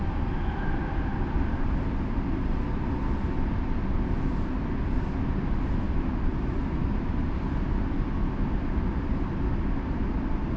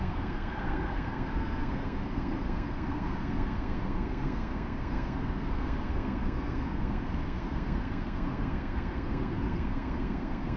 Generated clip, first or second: second